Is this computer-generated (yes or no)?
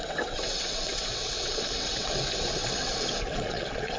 yes